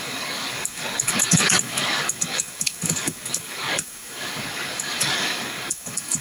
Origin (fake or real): fake